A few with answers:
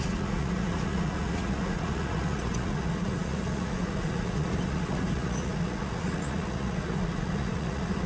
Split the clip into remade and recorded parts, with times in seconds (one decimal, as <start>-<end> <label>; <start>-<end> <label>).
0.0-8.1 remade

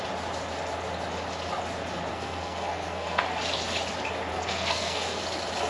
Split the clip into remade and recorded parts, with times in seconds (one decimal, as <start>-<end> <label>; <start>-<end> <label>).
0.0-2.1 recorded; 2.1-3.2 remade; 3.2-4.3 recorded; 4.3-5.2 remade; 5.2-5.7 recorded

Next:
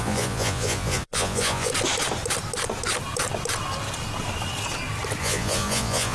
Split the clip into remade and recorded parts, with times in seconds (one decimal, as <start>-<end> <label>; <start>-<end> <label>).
0.0-1.7 remade; 1.7-5.2 recorded; 5.2-6.1 remade